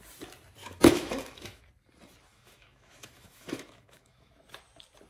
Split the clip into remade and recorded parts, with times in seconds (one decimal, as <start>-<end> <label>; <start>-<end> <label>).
0.0-0.6 recorded; 0.6-1.6 remade; 1.6-2.3 recorded; 2.3-4.3 remade; 4.3-5.1 recorded